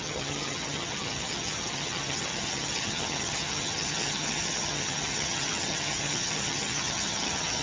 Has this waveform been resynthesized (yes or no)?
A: yes